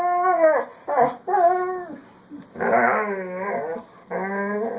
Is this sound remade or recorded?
recorded